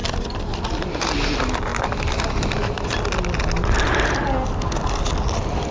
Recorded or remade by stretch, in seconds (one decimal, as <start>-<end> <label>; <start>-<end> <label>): 0.0-5.7 recorded